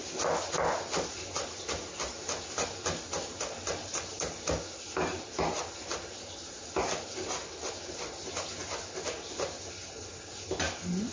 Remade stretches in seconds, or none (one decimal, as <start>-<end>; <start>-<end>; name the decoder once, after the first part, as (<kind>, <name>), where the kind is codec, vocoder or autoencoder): none